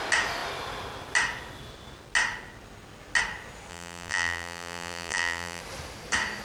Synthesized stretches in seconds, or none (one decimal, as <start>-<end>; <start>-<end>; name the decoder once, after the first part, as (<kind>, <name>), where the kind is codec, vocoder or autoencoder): 3.7-5.6 (vocoder, BigVGAN v2)